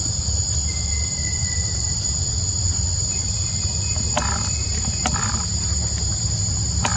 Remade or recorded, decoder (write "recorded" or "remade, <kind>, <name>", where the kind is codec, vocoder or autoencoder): recorded